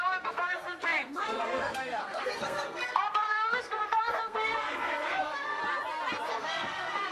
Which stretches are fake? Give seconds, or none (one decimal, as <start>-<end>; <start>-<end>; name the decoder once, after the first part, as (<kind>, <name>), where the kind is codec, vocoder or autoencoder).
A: 0.0-5.6 (codec, SNAC); 6.3-7.1